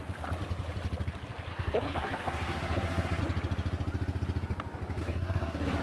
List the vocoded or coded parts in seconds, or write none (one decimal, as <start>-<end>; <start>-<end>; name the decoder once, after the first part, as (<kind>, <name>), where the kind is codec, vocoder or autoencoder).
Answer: 1.5-3.2 (codec, SNAC); 5.0-5.8